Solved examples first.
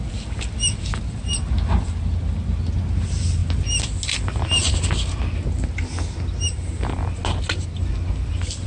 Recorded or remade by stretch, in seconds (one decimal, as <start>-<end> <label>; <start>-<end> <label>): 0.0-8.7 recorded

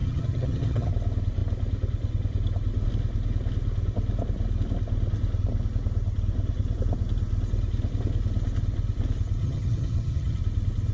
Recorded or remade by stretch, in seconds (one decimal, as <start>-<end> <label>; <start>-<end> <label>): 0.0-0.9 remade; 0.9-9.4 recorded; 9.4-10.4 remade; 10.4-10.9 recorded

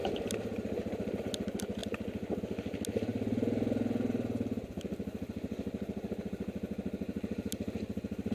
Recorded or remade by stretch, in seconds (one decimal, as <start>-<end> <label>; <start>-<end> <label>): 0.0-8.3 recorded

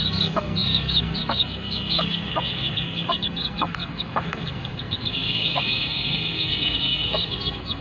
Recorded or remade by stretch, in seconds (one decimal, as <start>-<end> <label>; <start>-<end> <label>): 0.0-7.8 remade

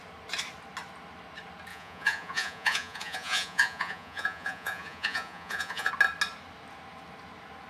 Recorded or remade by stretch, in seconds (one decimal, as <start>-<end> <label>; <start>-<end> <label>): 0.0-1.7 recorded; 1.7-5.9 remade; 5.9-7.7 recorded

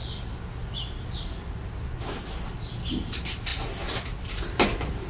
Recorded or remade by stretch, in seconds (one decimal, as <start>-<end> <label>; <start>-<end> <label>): 0.0-5.1 recorded

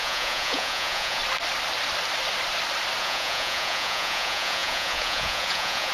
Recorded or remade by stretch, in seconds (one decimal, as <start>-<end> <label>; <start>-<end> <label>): 0.0-1.2 remade; 1.2-3.0 recorded; 3.0-5.9 remade